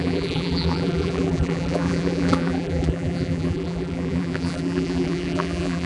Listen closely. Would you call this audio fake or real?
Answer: fake